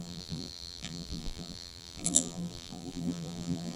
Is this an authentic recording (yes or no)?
no